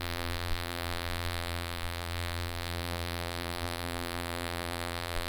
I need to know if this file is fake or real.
fake